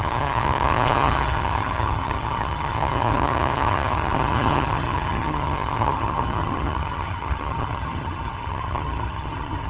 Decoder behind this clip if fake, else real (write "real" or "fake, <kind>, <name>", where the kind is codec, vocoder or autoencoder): fake, vocoder, HiFi-GAN